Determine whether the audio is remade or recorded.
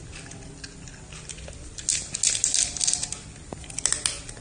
recorded